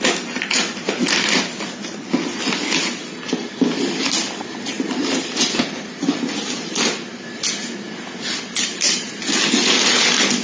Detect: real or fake real